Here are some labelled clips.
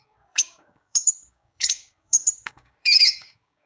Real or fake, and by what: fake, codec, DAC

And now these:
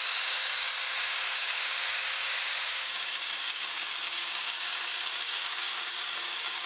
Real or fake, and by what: fake, codec, DAC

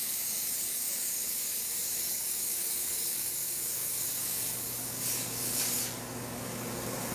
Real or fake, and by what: fake, codec, DAC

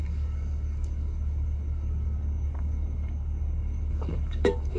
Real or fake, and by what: fake, codec, DAC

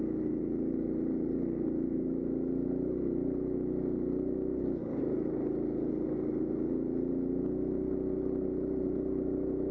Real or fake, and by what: real